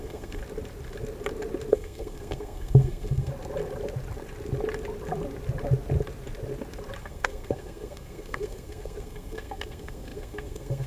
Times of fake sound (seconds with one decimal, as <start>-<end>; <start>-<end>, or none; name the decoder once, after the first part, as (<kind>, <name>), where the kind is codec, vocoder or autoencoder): 0.0-0.4 (codec, SNAC); 1.7-3.3; 7.0-10.9